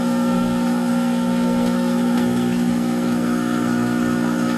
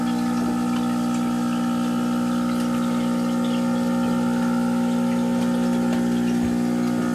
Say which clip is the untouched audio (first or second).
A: second